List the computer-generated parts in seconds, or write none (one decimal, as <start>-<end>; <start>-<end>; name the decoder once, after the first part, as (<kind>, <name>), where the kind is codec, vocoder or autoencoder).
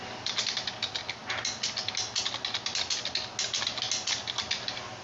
none